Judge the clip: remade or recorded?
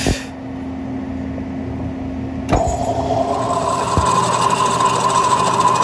recorded